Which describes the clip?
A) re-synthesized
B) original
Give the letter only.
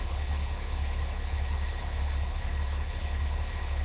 A